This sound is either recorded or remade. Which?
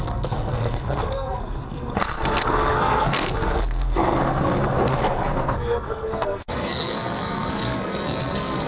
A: remade